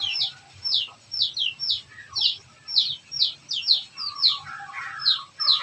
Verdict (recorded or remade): recorded